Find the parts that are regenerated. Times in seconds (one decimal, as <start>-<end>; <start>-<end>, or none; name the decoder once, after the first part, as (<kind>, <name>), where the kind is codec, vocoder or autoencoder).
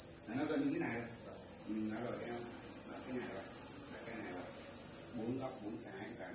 none